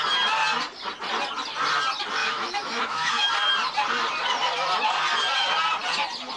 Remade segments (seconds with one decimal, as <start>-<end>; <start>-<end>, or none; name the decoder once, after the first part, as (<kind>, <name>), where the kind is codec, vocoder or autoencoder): 2.2-3.2 (autoencoder, DAC-VAE)